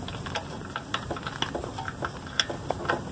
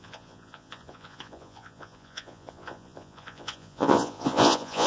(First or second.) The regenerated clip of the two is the second